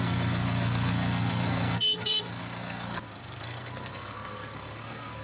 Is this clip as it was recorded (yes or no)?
no